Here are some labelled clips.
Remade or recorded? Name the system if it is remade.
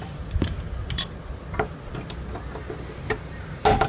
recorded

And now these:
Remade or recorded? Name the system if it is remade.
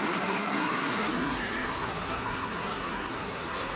remade, codec, SNAC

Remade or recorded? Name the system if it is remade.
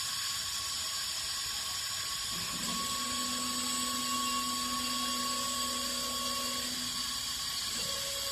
recorded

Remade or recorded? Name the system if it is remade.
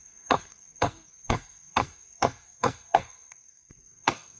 remade, codec, SNAC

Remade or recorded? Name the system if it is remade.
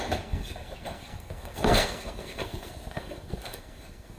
remade, codec, SNAC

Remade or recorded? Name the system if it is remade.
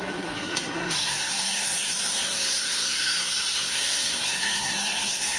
remade, codec, SNAC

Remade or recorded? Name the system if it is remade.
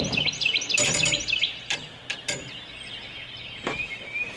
recorded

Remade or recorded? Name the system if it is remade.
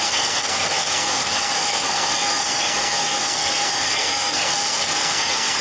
remade, codec, SNAC